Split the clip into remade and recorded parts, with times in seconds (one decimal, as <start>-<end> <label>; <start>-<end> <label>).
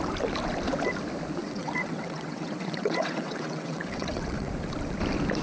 0.0-1.4 recorded; 1.4-4.5 remade; 4.5-5.4 recorded